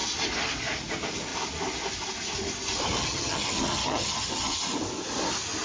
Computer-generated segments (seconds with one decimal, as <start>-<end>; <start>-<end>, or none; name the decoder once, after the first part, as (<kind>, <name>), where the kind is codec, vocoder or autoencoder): 3.0-4.6 (vocoder, HiFi-GAN)